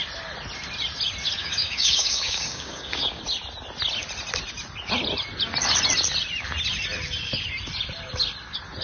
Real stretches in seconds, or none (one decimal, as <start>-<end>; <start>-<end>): 0.0-1.4; 3.2-8.8